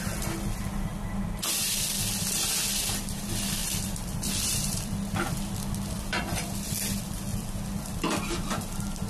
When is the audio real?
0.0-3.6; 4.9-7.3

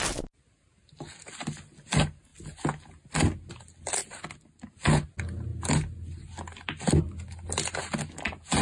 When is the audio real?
0.0-8.6

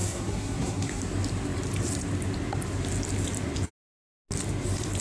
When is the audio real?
1.0-5.0

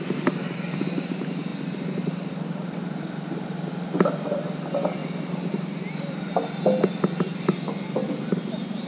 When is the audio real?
0.0-8.9

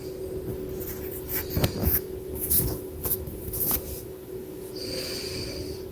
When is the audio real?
0.0-1.8; 4.7-5.9